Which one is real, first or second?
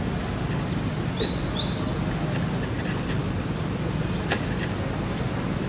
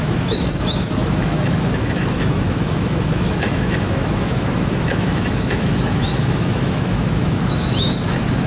first